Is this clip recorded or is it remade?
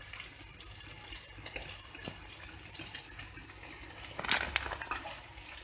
recorded